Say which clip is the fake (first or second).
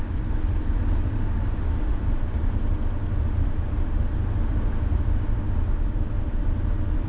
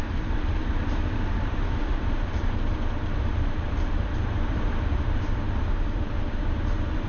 second